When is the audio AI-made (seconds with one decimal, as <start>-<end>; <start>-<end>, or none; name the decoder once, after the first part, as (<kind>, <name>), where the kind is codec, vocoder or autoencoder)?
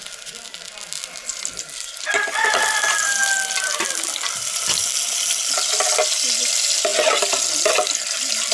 none